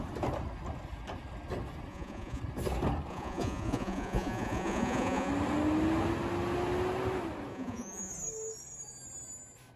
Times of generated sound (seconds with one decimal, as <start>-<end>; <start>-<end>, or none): 1.9-2.4; 3.1-5.3; 7.5-8.1

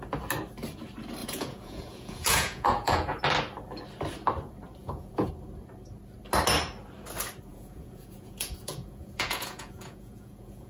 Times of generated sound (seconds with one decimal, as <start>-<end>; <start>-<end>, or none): 1.2-3.2; 4.8-5.3; 7.5-10.7

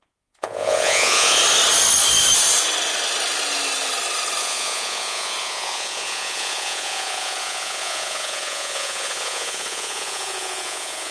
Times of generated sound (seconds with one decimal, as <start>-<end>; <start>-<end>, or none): 0.0-1.4; 4.4-11.1